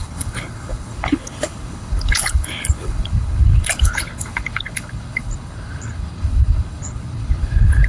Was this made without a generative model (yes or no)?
no